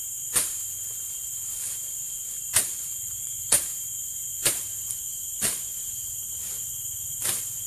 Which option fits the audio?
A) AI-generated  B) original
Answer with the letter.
A